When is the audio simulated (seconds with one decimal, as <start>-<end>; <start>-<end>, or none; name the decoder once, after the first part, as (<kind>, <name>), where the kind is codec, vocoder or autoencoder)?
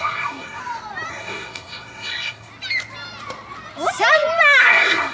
0.0-0.6 (codec, SNAC); 1.1-2.5; 4.6-5.1